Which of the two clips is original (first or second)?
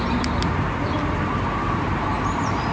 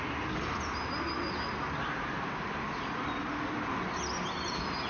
second